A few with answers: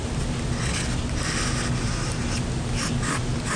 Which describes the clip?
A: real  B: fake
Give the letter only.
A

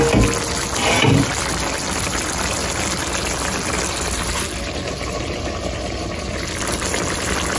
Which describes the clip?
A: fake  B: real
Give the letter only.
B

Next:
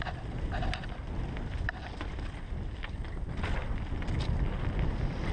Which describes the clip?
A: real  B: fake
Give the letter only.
A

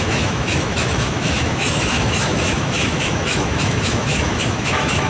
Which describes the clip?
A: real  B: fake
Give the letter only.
B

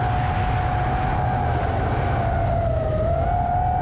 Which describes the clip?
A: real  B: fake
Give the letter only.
A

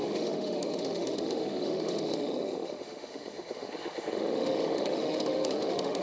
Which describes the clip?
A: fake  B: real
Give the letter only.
A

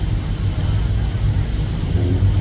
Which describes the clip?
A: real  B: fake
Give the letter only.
A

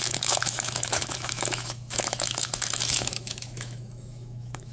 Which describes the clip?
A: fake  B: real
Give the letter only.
A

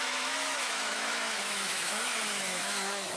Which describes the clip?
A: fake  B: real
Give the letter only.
A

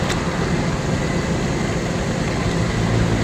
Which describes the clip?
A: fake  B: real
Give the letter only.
B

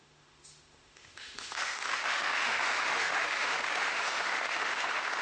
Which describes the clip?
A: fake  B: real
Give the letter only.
A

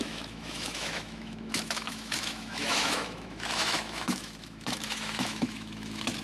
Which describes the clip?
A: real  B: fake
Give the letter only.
B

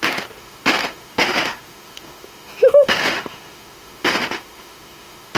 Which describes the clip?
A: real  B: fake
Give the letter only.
B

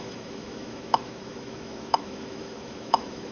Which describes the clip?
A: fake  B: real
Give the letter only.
A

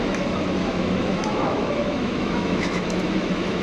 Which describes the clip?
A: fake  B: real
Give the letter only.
A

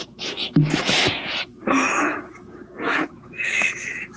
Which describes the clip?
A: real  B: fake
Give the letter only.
B